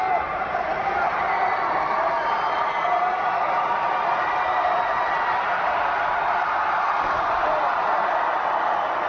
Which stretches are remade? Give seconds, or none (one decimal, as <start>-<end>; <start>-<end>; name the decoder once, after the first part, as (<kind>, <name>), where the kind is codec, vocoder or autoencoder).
none